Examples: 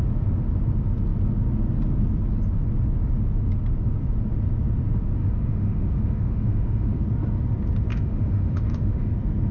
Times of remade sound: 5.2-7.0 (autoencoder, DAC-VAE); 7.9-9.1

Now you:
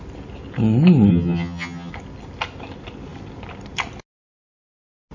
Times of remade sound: 1.1-1.9 (vocoder, HiFi-GAN)

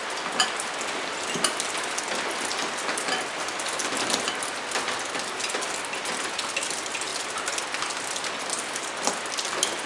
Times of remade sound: none

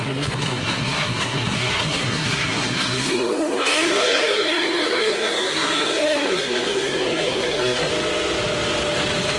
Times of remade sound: 0.0-7.9 (codec, SNAC)

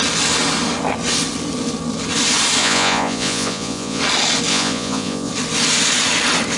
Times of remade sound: 2.6-4.0 (vocoder, Vocos); 4.5-5.3

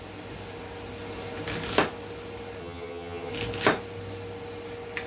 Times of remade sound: 2.6-3.3 (vocoder, HiFi-GAN)

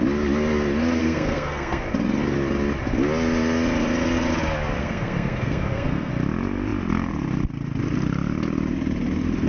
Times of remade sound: 1.0-1.8 (codec, SNAC); 4.8-6.1